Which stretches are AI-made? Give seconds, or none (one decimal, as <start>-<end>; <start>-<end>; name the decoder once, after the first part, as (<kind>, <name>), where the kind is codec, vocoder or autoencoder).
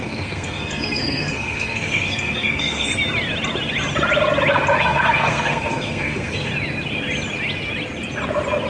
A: 0.0-2.9 (codec, SNAC); 4.8-6.5